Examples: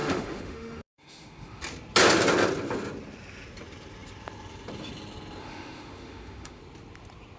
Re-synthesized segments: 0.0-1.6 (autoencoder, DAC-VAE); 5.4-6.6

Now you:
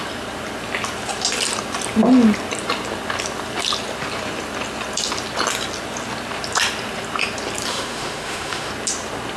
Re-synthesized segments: 7.7-8.7 (autoencoder, DAC-VAE)

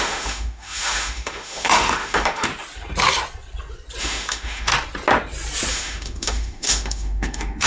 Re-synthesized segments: 0.0-2.5 (autoencoder, DAC-VAE); 4.0-4.7; 5.7-7.7

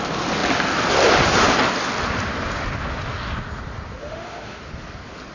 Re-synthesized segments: 4.0-4.6 (autoencoder, DAC-VAE)

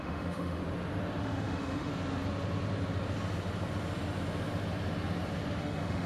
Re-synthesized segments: 0.0-0.6 (autoencoder, DAC-VAE); 1.2-1.9; 5.6-6.1

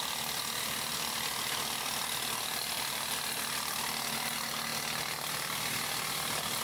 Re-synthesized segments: none

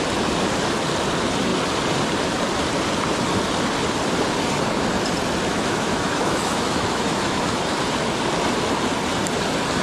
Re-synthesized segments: 5.5-7.6 (autoencoder, DAC-VAE)